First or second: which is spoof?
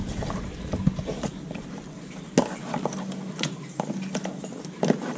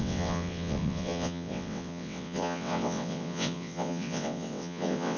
second